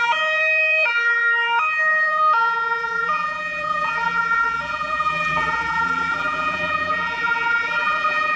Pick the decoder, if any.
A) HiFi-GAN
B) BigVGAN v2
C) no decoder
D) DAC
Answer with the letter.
B